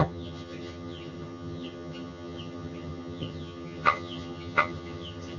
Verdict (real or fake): fake